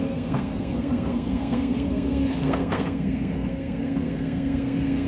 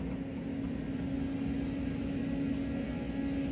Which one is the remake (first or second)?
first